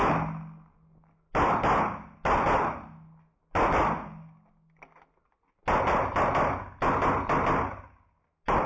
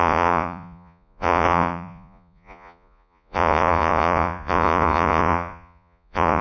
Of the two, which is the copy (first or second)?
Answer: second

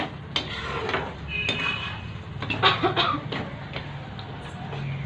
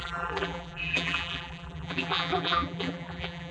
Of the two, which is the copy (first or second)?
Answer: second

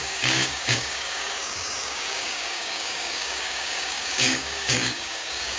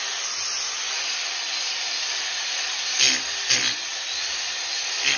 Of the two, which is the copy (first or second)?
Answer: first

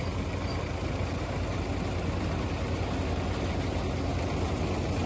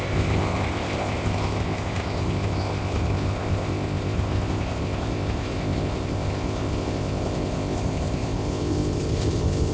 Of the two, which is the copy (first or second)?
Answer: second